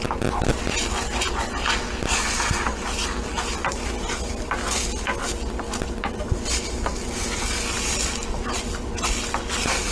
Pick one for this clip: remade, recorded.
recorded